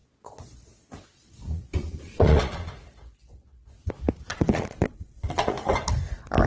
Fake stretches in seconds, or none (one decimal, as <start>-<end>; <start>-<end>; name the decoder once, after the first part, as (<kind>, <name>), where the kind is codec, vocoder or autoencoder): 0.0-3.9 (vocoder, Vocos); 4.3-5.7